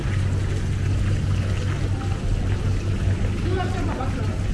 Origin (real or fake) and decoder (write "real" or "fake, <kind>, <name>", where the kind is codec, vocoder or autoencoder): real